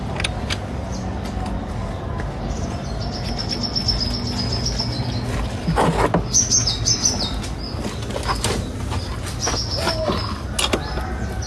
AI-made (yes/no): no